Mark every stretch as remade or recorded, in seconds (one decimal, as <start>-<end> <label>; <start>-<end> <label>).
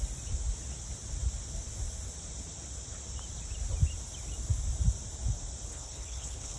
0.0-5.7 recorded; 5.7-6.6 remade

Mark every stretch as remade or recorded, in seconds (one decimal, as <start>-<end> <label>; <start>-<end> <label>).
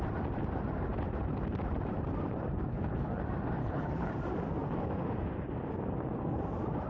0.0-2.7 recorded; 2.7-3.2 remade; 3.2-3.6 recorded; 3.6-4.1 remade; 4.1-6.9 recorded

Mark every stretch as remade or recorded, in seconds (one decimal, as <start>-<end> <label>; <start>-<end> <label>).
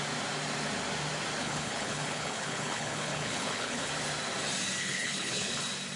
0.0-1.4 recorded; 1.4-3.9 remade; 3.9-4.8 recorded; 4.8-5.6 remade; 5.6-6.0 recorded